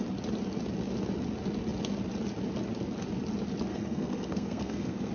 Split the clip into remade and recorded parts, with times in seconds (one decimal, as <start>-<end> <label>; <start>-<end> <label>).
0.0-3.7 recorded; 3.7-5.1 remade